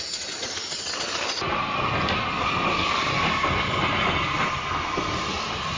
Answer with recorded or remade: recorded